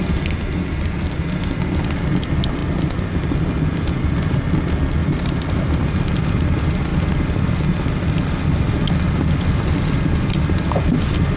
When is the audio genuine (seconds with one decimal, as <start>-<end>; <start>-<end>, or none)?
0.0-5.0; 6.1-11.4